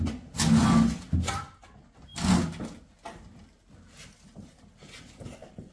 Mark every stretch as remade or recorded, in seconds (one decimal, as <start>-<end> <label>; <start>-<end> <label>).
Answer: 0.0-5.7 recorded